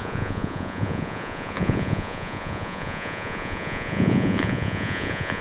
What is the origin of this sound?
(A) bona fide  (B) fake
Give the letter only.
B